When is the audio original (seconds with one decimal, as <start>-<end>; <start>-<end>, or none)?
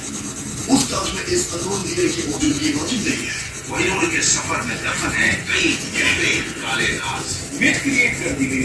0.0-1.8; 5.6-8.6